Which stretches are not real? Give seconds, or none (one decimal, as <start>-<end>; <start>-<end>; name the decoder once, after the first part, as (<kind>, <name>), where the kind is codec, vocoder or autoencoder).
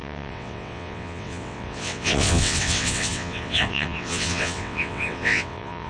0.0-5.9 (vocoder, WaveNeXt)